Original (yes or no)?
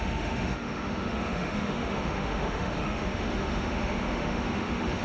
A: no